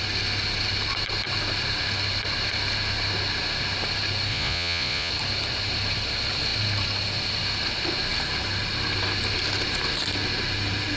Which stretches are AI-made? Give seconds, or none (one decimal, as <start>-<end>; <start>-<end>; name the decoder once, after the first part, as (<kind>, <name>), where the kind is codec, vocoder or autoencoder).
4.3-5.1 (vocoder, Vocos)